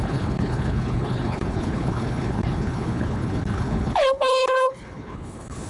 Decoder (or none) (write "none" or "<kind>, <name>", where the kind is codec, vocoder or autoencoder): codec, HILCodec